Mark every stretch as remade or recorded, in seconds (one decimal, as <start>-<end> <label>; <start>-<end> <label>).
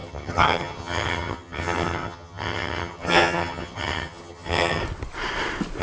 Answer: 0.0-4.8 remade; 4.8-5.8 recorded